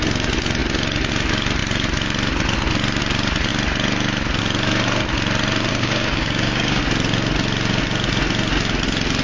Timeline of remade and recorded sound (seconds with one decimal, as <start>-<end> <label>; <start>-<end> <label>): 0.0-5.7 recorded; 5.7-6.8 remade; 6.8-9.2 recorded

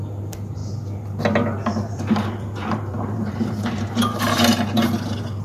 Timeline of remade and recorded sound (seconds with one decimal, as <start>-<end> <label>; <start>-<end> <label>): 0.0-1.7 recorded; 1.7-4.9 remade; 4.9-5.4 recorded

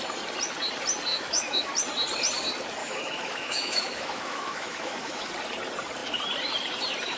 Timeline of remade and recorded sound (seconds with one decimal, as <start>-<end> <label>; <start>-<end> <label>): 0.0-1.1 recorded; 1.1-1.7 remade; 1.7-2.8 recorded; 2.8-5.3 remade; 5.3-7.2 recorded

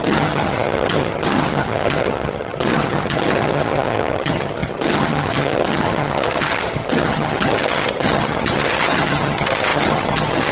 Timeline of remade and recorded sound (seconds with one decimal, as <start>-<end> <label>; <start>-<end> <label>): 0.0-10.5 remade

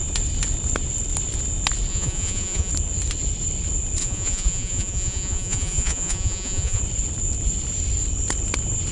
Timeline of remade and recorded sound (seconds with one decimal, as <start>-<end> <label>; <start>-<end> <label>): 0.0-1.9 recorded; 1.9-2.7 remade; 2.7-4.0 recorded; 4.0-6.8 remade; 6.8-8.9 recorded

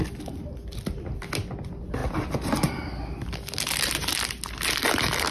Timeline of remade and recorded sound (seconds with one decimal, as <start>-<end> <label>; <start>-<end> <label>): 0.0-5.3 recorded